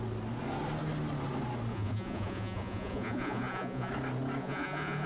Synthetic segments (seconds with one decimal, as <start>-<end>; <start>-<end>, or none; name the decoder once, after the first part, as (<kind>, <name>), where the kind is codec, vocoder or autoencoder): 1.7-3.9 (vocoder, Vocos); 4.4-5.1